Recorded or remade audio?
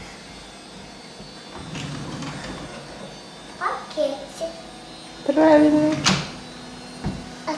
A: recorded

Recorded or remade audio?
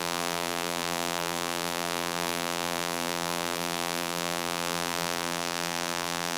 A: remade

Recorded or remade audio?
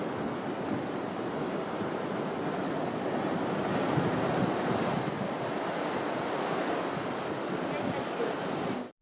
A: recorded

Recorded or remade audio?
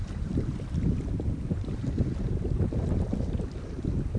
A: recorded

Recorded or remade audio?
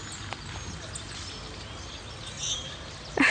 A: recorded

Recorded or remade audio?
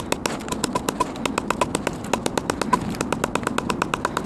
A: recorded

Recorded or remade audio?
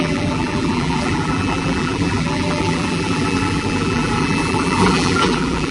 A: remade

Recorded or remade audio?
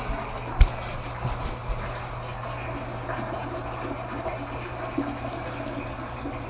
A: recorded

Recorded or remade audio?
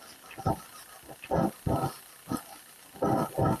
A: recorded